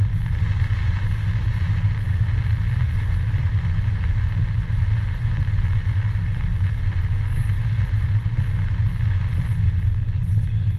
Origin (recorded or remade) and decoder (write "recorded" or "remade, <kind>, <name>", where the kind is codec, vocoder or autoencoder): recorded